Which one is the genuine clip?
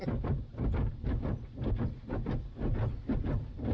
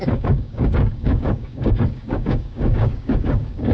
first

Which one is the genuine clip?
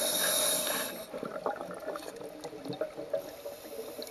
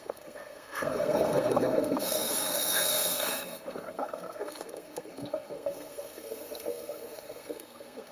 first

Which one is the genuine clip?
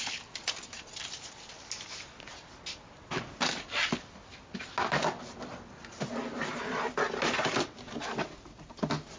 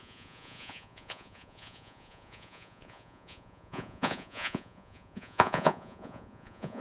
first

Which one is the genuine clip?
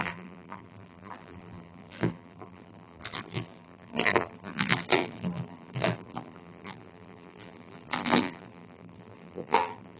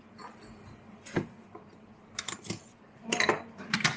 second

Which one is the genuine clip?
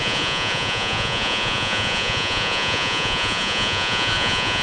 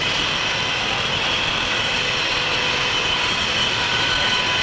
second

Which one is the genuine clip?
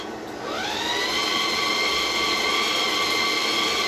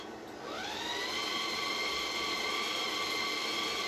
first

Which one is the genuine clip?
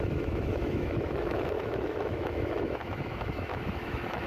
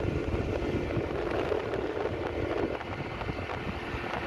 second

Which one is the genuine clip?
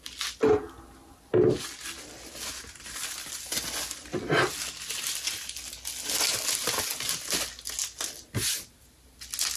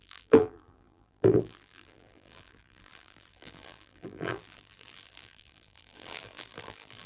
first